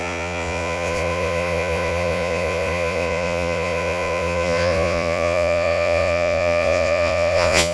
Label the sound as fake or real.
fake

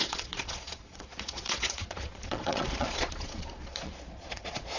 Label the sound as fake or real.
fake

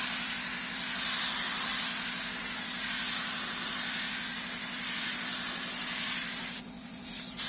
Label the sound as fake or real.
real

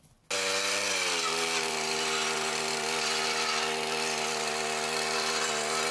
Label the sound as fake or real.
real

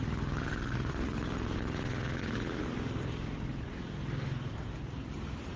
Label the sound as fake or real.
fake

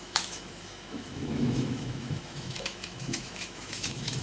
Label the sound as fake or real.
fake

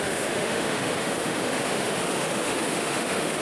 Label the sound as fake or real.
fake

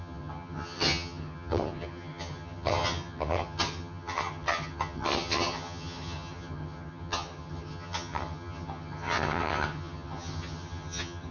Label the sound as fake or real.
fake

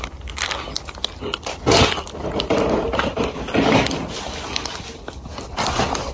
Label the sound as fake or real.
real